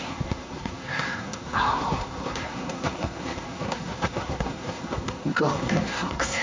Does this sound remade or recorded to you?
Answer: remade